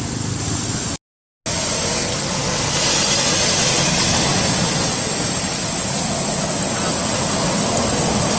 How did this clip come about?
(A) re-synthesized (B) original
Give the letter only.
B